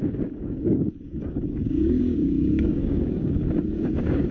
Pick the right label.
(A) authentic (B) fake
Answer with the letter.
B